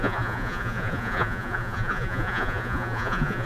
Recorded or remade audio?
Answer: remade